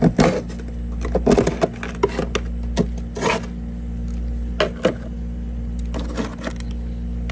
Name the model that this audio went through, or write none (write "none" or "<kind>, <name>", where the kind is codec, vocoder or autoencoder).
none